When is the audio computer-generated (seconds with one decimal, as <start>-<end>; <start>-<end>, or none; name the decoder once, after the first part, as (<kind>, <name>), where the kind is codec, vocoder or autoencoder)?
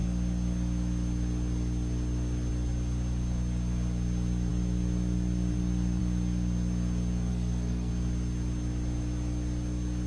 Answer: 7.3-7.9 (codec, SNAC)